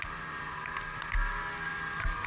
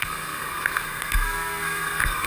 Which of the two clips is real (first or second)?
first